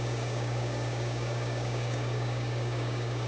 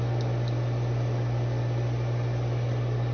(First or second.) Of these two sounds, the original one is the second